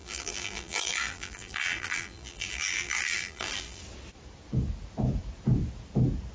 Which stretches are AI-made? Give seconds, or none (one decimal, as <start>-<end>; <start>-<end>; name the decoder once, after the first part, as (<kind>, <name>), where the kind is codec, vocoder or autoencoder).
0.0-3.8 (vocoder, BigVGAN v2)